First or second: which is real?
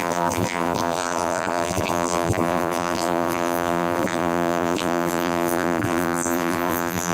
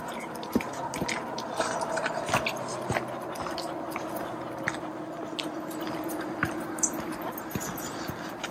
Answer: second